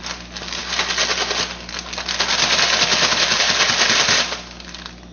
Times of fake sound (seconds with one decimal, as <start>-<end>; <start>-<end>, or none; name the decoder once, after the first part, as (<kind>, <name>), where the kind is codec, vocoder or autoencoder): none